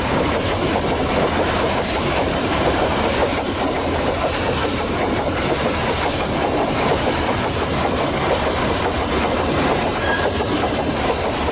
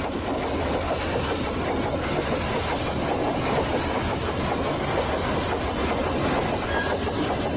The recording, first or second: second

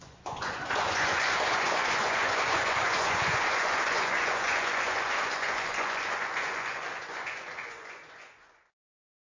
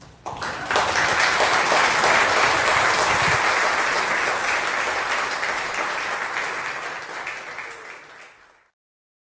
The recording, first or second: second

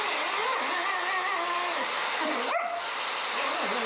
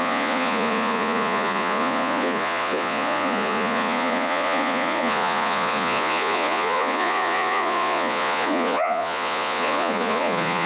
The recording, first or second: first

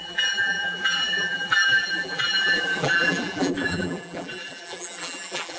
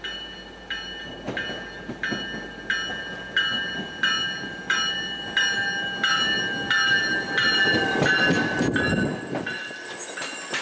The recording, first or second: second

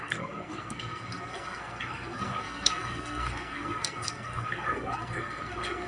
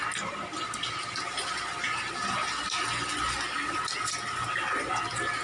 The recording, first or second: second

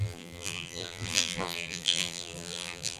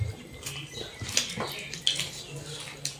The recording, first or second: second